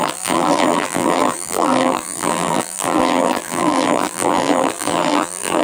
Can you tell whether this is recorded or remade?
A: remade